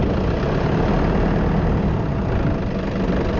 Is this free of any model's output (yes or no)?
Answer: yes